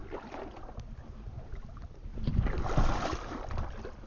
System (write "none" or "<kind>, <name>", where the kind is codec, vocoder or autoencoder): none